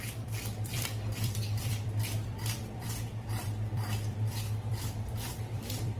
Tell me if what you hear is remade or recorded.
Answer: remade